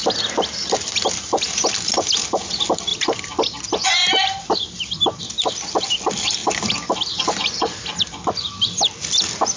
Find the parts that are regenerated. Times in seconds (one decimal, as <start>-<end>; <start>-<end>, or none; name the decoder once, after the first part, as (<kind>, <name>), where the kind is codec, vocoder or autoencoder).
4.0-5.2 (vocoder, BigVGAN v2)